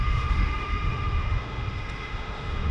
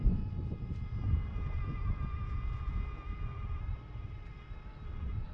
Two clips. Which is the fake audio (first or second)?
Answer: first